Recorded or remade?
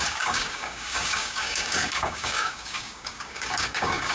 remade